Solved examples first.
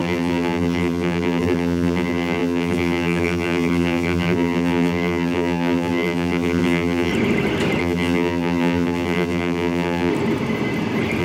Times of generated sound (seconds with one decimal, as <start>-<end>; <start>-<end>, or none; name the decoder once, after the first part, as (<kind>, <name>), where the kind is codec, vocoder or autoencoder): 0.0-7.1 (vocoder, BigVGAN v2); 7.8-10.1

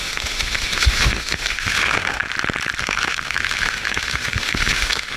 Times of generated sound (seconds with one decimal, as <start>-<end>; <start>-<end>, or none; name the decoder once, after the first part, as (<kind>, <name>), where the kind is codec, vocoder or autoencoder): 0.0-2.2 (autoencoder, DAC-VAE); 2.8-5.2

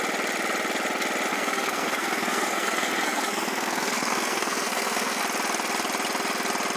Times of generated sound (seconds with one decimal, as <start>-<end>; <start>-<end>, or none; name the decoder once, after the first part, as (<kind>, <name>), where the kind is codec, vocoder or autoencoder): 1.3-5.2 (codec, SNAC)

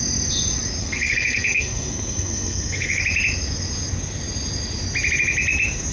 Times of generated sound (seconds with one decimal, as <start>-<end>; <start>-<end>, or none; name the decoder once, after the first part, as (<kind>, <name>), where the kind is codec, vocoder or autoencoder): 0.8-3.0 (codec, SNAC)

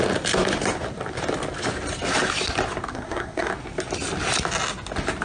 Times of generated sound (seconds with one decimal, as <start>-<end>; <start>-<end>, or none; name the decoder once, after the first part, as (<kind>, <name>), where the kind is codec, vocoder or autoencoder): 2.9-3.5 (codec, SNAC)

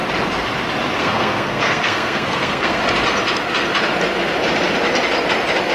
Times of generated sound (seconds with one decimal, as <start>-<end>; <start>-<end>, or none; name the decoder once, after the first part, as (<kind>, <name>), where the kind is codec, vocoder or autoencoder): 1.0-2.8 (codec, SNAC)